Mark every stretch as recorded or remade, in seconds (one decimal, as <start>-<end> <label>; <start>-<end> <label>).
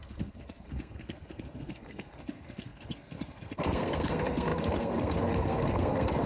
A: 0.0-6.3 remade